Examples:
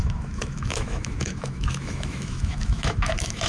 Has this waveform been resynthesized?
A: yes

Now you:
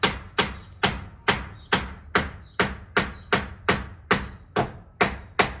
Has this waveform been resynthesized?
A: no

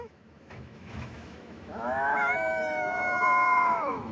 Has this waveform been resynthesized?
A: yes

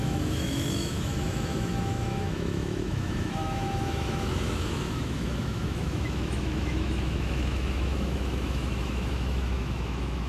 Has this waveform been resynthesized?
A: yes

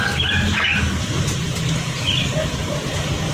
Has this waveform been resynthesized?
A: no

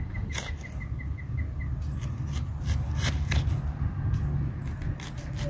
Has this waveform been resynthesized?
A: no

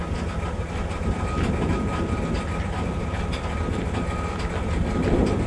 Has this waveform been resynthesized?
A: no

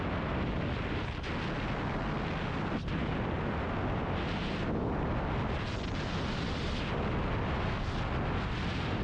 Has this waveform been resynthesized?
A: no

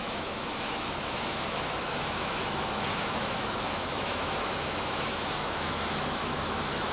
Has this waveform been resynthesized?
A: yes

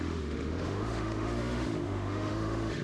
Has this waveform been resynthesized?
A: yes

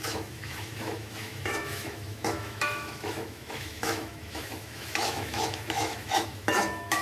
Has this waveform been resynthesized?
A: yes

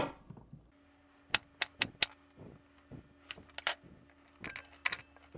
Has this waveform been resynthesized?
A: no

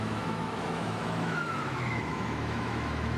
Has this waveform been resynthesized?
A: yes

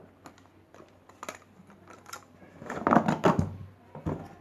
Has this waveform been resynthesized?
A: no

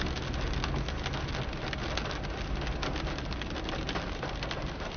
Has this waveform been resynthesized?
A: no